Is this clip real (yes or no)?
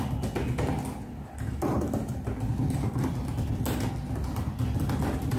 yes